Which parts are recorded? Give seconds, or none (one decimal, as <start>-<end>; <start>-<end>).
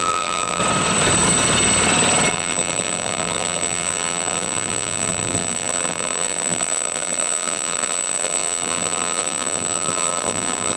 0.6-2.3